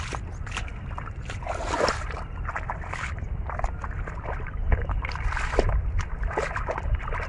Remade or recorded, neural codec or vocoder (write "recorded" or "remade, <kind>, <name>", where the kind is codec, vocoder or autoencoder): recorded